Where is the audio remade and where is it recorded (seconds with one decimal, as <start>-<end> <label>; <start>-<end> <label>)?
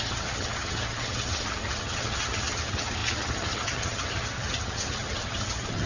0.0-5.9 remade